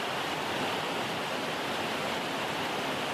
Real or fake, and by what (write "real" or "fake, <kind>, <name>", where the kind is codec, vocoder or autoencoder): real